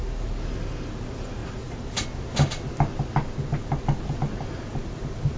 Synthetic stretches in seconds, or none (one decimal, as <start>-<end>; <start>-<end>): none